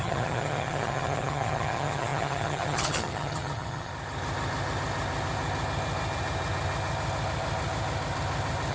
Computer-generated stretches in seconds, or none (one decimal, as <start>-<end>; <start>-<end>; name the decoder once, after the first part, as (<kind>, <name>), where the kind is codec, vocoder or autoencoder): 0.0-3.9 (vocoder, HiFi-GAN)